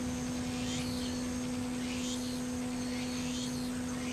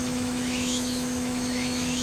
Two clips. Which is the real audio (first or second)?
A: first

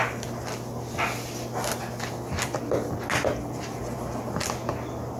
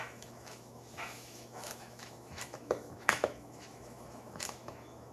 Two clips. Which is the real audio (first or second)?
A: first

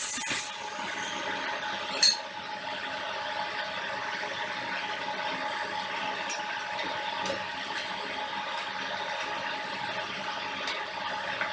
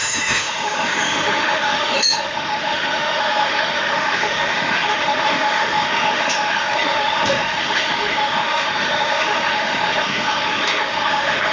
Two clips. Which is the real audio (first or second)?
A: first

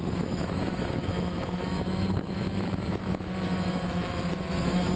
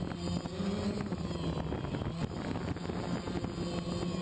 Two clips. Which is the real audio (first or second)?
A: second